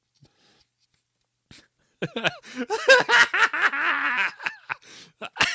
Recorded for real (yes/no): yes